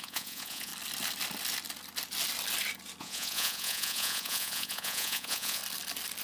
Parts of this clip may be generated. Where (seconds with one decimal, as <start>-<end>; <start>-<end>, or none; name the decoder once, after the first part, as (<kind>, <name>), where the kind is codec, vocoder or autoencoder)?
0.0-0.7 (vocoder, Vocos); 3.0-5.6

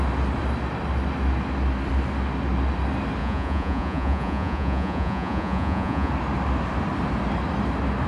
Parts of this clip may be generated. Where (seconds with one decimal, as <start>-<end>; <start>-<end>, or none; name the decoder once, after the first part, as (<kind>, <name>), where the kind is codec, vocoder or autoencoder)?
3.2-6.1 (vocoder, Vocos)

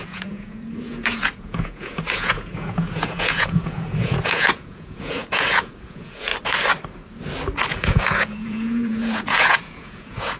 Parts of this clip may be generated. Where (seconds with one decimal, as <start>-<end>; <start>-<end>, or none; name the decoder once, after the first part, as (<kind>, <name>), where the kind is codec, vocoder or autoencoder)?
0.0-6.3 (vocoder, Vocos); 7.7-10.4

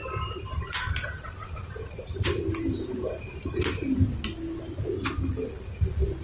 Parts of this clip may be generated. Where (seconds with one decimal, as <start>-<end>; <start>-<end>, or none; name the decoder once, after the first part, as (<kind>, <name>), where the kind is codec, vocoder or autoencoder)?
none

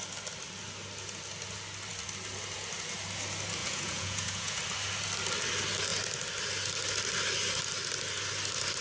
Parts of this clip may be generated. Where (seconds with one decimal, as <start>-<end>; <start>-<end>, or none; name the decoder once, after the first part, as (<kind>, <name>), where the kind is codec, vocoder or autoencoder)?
3.6-4.6 (vocoder, Vocos)

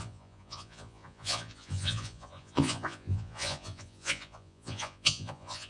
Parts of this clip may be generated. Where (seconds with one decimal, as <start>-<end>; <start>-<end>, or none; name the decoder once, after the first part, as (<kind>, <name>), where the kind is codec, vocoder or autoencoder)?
0.0-5.7 (vocoder, Vocos)

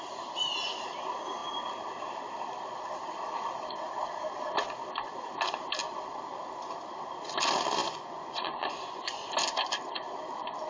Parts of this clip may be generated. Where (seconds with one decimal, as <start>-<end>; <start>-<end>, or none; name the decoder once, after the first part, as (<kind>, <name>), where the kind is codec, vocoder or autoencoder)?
7.8-9.1 (vocoder, Vocos)

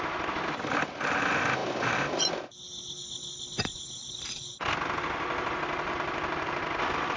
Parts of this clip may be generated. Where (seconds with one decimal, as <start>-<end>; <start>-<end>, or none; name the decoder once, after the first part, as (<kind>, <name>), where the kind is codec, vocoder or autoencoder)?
none